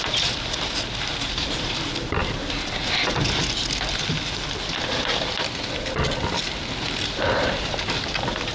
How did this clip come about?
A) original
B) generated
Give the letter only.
A